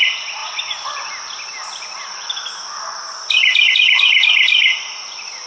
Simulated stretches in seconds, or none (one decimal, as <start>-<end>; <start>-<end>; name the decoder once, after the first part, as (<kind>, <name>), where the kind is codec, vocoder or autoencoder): none